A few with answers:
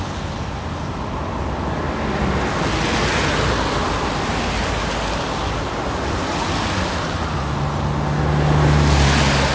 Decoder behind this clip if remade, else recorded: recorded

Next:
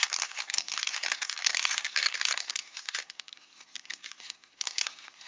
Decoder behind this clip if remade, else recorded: remade, codec, SNAC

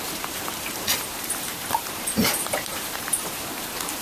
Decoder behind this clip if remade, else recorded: remade, vocoder, BigVGAN v2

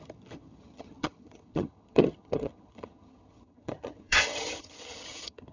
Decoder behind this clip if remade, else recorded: remade, vocoder, HiFi-GAN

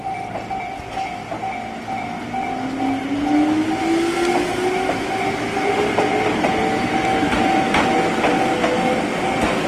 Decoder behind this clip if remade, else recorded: recorded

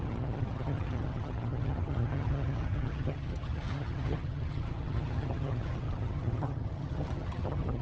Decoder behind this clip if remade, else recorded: remade, vocoder, HiFi-GAN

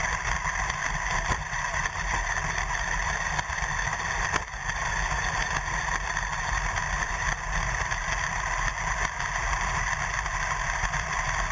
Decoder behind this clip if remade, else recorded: recorded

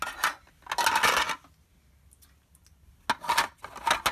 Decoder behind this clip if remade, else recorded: recorded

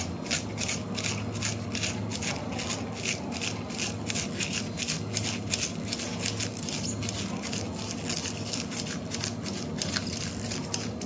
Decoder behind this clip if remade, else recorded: recorded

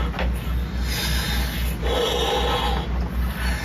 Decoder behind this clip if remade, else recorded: recorded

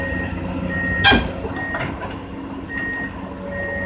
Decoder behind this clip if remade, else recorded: recorded